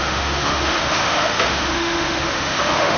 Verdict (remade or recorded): remade